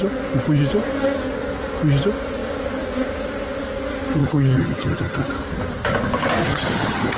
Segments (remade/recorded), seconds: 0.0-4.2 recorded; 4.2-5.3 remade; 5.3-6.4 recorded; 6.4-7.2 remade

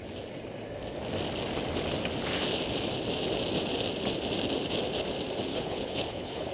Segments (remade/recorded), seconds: 0.0-5.5 recorded; 5.5-6.5 remade

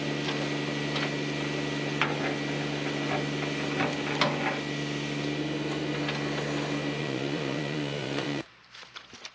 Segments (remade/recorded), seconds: 0.0-7.0 recorded; 7.0-8.5 remade; 8.5-9.3 recorded

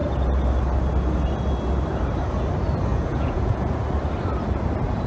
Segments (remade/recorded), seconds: 0.0-2.9 recorded; 2.9-3.8 remade; 3.8-5.1 recorded